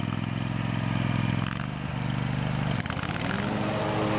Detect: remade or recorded recorded